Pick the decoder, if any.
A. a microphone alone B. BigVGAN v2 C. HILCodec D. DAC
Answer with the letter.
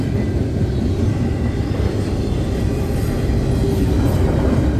A